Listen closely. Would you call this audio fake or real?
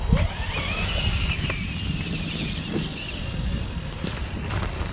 real